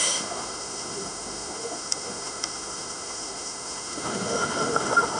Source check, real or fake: fake